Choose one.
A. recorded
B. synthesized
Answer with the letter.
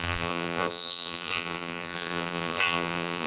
B